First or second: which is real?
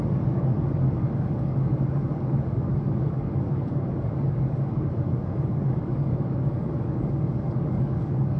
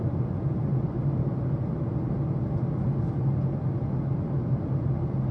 second